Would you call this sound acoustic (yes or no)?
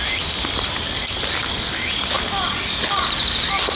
yes